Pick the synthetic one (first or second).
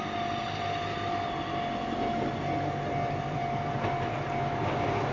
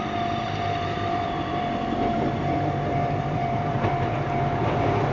second